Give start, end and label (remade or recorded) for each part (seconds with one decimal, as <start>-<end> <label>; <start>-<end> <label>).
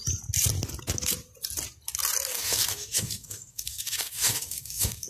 0.0-2.3 recorded; 2.3-5.1 remade